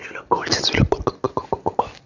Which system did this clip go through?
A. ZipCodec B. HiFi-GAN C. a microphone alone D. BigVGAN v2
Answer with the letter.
C